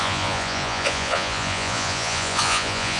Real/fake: fake